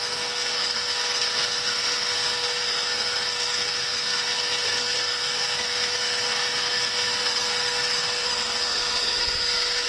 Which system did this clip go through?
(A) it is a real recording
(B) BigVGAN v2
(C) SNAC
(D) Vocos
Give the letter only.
C